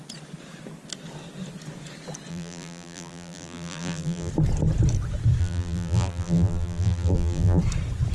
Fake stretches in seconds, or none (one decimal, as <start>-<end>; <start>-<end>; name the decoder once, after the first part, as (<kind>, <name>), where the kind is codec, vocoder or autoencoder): 2.3-4.3 (vocoder, BigVGAN v2); 5.4-7.6

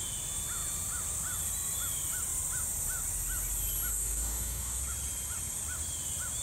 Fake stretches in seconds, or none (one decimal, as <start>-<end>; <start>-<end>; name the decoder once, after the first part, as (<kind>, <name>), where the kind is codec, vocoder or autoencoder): 3.9-4.8 (codec, DAC)

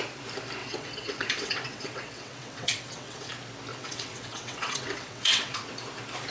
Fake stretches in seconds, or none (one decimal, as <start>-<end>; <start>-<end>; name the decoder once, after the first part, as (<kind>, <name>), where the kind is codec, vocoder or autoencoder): 0.6-3.3 (vocoder, WaveNeXt); 3.7-5.7

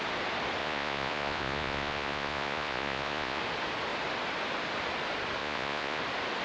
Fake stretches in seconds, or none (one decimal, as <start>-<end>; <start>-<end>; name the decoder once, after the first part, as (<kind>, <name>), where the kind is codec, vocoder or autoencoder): 0.6-3.4 (vocoder, Vocos); 5.4-6.0

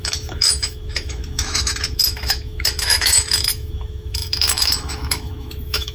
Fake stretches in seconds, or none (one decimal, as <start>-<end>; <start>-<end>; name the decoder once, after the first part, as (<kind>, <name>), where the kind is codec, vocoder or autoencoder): 0.0-5.9 (autoencoder, DAC-VAE)

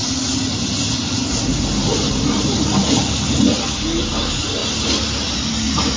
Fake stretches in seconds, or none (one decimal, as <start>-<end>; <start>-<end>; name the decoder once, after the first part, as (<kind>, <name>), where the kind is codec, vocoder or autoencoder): none